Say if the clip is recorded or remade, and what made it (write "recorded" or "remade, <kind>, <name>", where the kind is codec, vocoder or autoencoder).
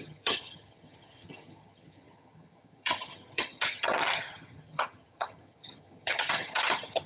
remade, vocoder, HiFi-GAN